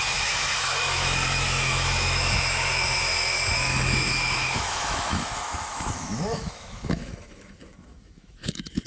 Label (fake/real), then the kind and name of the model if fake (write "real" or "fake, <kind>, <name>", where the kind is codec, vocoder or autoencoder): fake, autoencoder, DAC-VAE